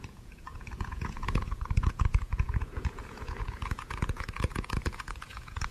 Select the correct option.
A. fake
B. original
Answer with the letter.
A